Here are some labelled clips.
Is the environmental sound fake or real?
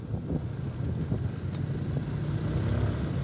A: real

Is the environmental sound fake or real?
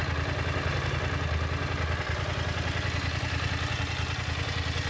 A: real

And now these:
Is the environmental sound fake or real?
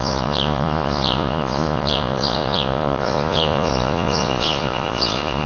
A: fake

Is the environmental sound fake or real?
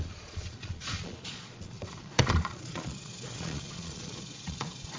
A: fake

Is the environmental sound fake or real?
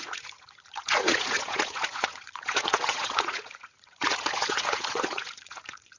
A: fake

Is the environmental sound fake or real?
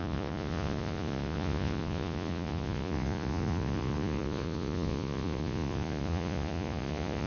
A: fake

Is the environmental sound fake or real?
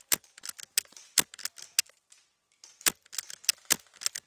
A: real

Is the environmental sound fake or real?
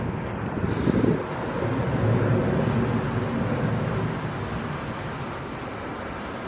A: real